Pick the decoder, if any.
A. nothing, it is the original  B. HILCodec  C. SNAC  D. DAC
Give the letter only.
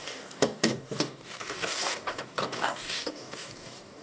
D